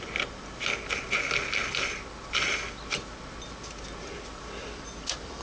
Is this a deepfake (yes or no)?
no